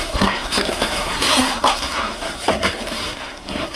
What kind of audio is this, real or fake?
fake